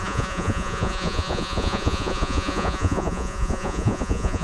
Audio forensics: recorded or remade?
remade